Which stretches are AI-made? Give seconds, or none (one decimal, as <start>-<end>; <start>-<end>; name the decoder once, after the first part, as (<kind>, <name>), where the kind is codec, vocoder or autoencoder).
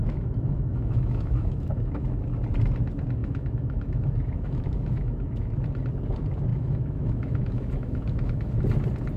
0.0-2.2 (autoencoder, DAC-VAE); 3.2-5.5; 6.5-8.5